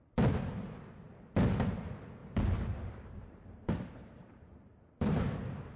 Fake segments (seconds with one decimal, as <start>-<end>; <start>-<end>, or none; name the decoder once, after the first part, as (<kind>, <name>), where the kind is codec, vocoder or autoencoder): 2.2-5.8 (vocoder, BigVGAN v2)